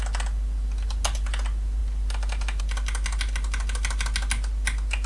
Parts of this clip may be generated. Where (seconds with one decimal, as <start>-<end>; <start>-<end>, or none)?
none